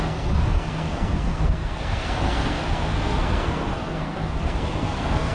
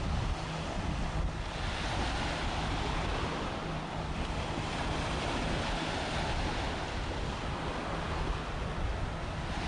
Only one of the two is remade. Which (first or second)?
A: first